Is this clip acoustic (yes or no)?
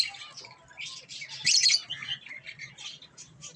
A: yes